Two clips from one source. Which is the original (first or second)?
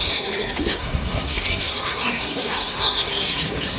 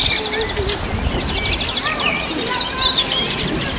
second